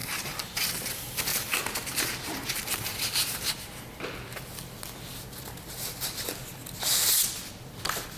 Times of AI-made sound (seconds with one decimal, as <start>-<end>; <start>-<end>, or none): 0.0-0.7; 1.3-3.8